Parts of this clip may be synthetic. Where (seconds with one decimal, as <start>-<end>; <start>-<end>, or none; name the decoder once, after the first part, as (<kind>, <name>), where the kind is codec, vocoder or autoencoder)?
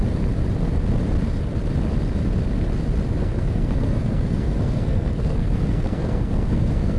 3.2-7.0 (codec, SNAC)